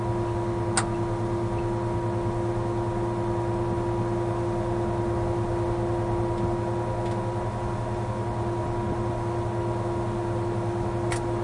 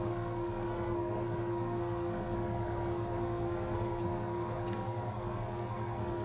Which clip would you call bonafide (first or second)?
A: first